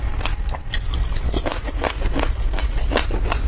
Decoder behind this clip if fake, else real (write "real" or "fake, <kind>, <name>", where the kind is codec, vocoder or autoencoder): real